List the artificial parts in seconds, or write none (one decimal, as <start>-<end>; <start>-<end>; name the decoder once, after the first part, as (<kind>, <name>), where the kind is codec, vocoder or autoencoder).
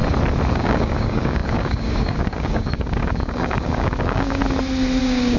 0.5-4.4 (codec, DAC); 5.0-5.4